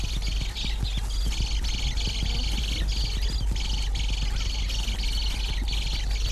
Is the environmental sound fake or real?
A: real